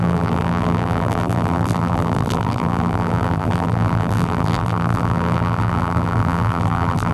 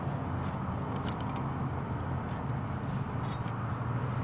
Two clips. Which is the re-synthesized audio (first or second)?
first